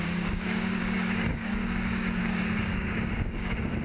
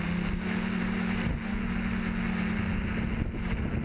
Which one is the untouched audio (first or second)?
second